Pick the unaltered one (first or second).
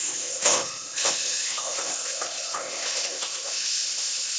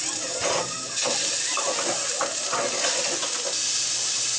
second